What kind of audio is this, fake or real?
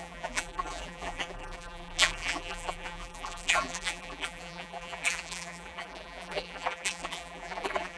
fake